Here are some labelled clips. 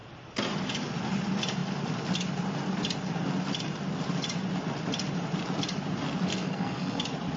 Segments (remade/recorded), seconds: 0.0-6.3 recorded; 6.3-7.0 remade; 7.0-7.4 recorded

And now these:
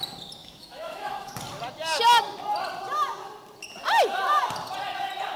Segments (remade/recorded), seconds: 0.0-0.4 recorded; 0.4-1.3 remade; 1.3-5.4 recorded

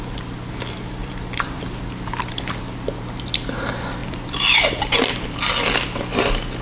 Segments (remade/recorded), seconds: 0.0-1.0 recorded; 1.0-1.8 remade; 1.8-4.0 recorded; 4.0-5.4 remade; 5.4-6.6 recorded